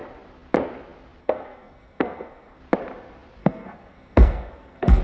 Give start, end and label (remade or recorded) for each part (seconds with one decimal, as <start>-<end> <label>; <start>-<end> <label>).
0.0-1.2 recorded; 1.2-2.6 remade; 2.6-3.4 recorded; 3.4-5.0 remade